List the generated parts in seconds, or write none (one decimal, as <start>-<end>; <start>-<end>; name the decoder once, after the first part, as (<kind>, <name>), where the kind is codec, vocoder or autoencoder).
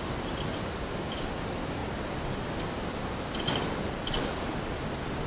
none